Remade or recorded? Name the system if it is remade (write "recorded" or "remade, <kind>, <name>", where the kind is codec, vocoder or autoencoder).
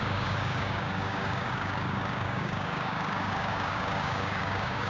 remade, codec, DAC